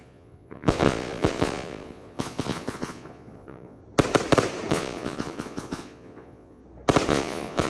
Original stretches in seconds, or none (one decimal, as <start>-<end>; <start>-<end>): 3.8-4.7; 6.6-7.1